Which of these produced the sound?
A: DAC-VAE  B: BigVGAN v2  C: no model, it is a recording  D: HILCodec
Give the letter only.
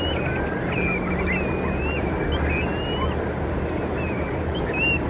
C